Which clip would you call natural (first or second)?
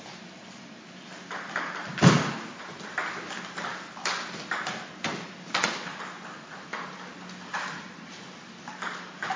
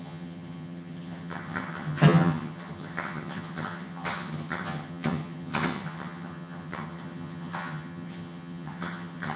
first